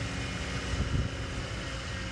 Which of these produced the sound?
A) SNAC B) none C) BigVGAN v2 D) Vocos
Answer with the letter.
B